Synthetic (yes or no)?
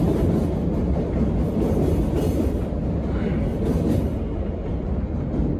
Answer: no